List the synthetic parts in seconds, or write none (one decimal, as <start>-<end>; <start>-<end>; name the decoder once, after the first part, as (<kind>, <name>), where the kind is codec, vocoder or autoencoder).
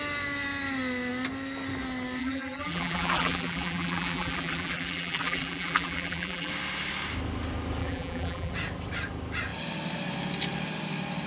2.2-6.5 (vocoder, BigVGAN v2); 7.8-8.5